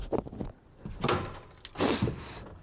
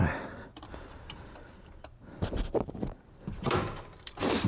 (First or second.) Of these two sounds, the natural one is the first